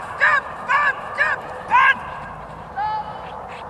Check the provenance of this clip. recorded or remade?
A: remade